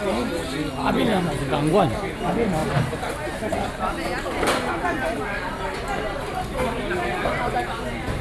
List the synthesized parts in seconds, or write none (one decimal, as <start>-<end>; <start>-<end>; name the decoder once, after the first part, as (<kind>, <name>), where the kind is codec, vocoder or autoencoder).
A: none